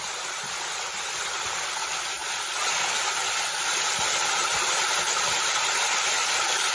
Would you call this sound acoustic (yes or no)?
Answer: yes